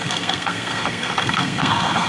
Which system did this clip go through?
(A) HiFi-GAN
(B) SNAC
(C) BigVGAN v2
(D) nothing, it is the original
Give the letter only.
B